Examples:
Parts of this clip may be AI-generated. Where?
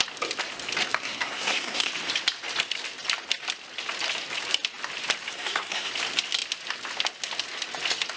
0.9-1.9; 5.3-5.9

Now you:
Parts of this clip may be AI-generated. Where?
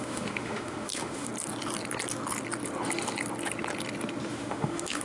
0.0-1.3; 4.3-5.0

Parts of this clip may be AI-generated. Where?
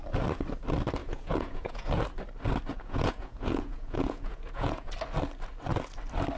1.0-2.0; 2.7-4.9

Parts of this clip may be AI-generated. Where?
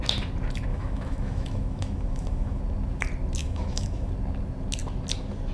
0.7-2.6; 3.4-4.1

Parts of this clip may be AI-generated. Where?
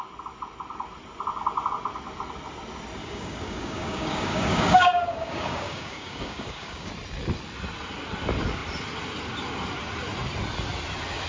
3.0-6.9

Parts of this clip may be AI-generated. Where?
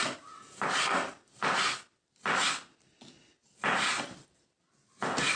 none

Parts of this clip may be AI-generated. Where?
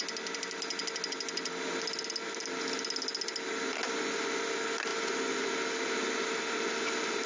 none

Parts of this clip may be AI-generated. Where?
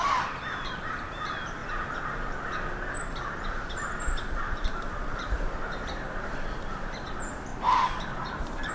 0.0-1.6; 4.4-8.7